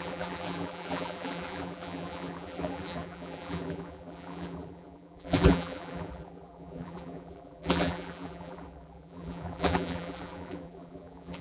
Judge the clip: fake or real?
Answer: fake